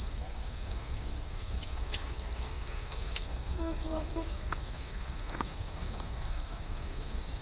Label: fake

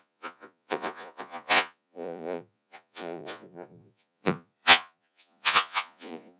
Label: fake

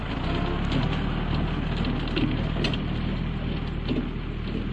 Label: real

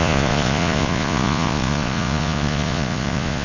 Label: fake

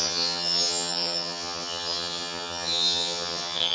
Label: fake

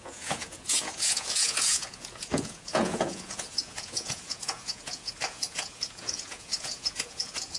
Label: fake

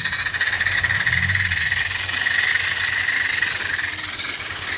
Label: real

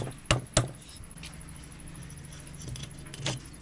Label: real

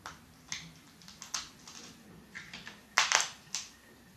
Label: real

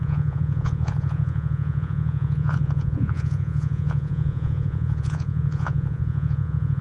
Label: fake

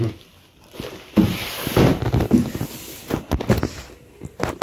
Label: real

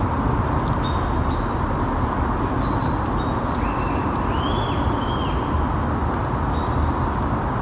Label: real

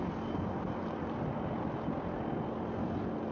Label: real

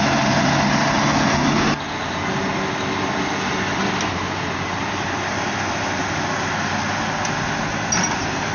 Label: real